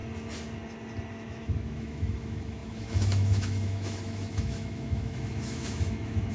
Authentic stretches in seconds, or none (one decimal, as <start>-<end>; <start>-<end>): 0.0-1.1

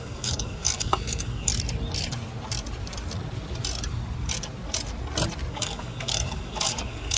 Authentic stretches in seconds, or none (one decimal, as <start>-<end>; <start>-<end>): 1.5-5.5

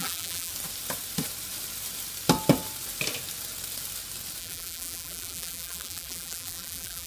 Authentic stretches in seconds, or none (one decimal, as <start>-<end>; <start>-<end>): 0.5-4.4

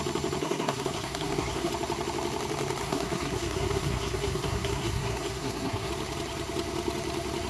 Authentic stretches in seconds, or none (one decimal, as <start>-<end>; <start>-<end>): 0.0-0.4; 1.7-2.8; 5.9-7.5

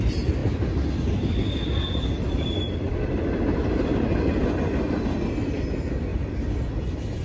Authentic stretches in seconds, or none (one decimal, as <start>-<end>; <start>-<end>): 0.0-7.2

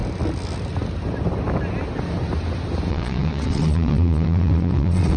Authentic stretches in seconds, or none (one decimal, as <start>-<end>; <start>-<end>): 0.0-2.9

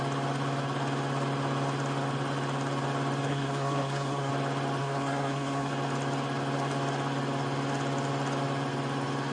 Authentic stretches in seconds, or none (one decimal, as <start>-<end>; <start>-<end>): 0.0-3.3; 4.3-4.8; 5.7-9.3

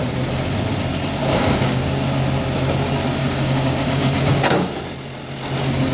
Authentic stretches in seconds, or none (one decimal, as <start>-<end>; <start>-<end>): 0.0-1.2; 1.9-3.2; 4.8-5.9